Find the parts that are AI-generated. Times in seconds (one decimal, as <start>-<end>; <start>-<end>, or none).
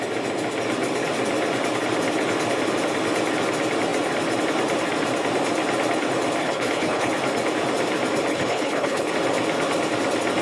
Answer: 6.4-7.1; 8.3-9.1